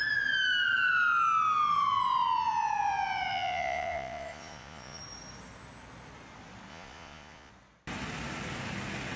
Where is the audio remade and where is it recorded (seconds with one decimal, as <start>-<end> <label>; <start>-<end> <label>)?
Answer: 0.0-3.3 recorded; 3.3-5.0 remade; 5.0-6.7 recorded; 6.7-7.5 remade; 7.5-9.2 recorded